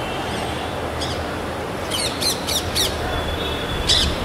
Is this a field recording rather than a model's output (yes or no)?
no